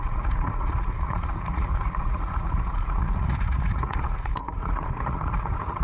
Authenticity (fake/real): fake